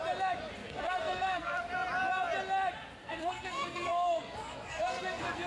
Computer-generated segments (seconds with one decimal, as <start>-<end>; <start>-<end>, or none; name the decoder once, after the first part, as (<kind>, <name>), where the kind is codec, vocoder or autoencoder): 0.6-1.6 (codec, SNAC); 3.0-5.5